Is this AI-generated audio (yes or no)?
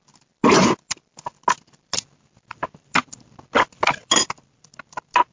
no